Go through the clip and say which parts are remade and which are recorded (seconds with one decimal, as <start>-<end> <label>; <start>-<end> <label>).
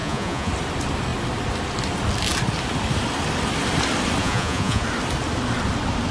0.0-0.5 remade; 0.5-4.2 recorded; 4.2-4.8 remade; 4.8-6.1 recorded